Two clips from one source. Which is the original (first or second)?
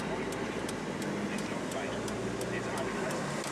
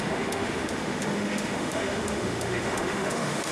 first